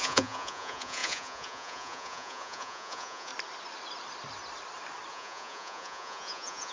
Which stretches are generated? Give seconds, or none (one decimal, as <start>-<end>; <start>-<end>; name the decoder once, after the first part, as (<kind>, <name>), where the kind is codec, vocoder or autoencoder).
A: 0.0-3.3 (vocoder, Vocos); 5.1-6.7